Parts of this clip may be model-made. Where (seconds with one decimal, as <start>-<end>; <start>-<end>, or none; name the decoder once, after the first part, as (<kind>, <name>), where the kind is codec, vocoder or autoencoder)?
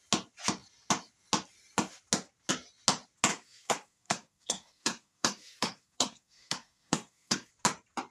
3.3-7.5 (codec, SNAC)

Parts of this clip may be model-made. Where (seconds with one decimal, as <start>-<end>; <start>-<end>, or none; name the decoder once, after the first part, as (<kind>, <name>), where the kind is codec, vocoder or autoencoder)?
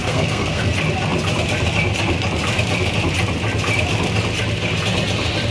0.0-0.7 (codec, SNAC)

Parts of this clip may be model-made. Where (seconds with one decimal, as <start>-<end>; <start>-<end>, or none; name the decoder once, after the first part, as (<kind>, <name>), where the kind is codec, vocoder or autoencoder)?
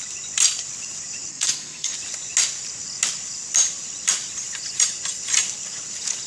1.3-1.9 (codec, SNAC)